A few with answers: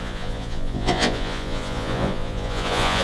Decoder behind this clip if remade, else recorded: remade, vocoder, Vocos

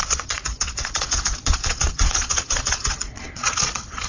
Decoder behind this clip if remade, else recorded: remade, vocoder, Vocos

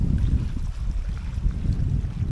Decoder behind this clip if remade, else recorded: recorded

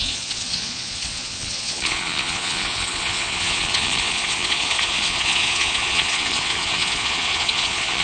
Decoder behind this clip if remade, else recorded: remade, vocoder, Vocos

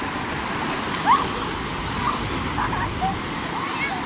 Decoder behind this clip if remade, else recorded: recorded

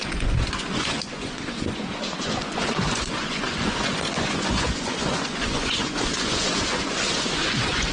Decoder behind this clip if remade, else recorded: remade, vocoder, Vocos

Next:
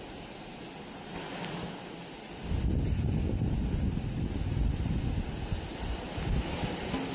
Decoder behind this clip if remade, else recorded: recorded